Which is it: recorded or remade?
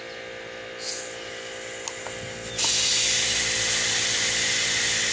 recorded